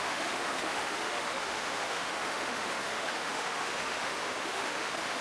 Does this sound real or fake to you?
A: fake